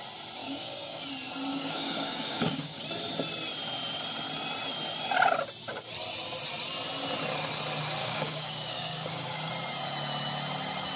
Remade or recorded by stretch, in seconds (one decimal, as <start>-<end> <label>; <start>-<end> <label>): 0.0-0.4 recorded; 0.4-1.0 remade; 1.0-1.5 recorded; 1.5-2.8 remade; 2.8-8.0 recorded; 8.0-9.5 remade; 9.5-11.0 recorded